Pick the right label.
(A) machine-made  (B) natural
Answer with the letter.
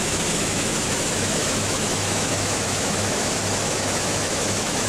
A